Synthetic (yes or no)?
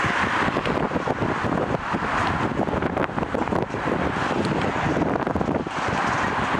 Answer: yes